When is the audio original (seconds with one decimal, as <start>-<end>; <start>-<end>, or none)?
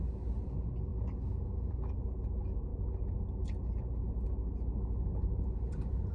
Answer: 0.0-5.1